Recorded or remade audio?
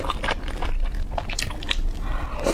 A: recorded